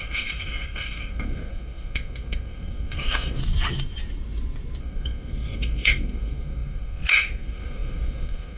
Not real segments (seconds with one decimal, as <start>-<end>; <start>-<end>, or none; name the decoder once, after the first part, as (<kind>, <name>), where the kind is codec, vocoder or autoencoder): 0.0-3.4 (codec, SNAC); 4.8-8.6

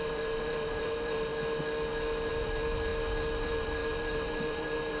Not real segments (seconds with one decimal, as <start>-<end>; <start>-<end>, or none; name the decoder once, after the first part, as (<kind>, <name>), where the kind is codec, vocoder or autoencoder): 0.0-1.3 (vocoder, BigVGAN v2); 2.3-2.9; 3.4-5.0

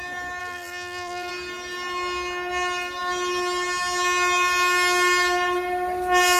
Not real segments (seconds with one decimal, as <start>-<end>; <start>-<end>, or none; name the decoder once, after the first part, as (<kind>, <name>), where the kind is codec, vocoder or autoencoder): 0.4-1.3 (vocoder, BigVGAN v2)

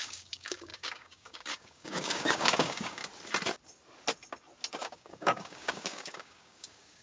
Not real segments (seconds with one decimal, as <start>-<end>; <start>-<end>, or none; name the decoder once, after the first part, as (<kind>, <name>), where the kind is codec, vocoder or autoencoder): 0.0-3.0 (codec, DAC); 4.7-7.0

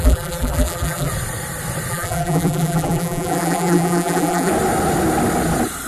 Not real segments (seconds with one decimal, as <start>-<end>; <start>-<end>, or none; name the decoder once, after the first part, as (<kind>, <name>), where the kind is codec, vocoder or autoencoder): 0.0-1.1 (vocoder, BigVGAN v2); 1.9-4.5

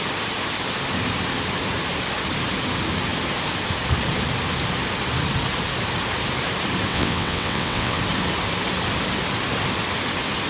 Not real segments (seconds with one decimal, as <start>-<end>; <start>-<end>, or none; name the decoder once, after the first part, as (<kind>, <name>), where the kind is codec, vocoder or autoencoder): 6.9-8.0 (vocoder, WaveNeXt)